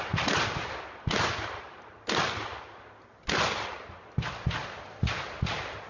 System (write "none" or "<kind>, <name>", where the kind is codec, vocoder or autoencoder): none